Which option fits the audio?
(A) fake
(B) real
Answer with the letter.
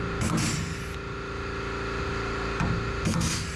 B